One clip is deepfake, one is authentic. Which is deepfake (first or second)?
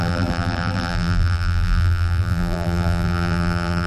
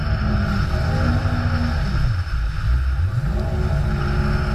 first